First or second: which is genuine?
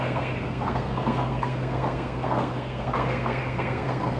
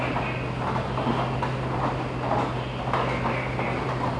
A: second